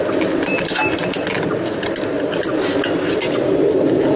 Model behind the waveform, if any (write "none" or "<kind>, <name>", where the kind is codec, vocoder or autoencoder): none